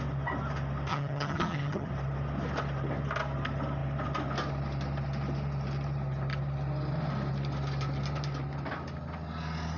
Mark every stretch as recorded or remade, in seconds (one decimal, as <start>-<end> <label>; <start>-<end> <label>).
0.0-0.9 recorded; 0.9-1.9 remade; 1.9-9.8 recorded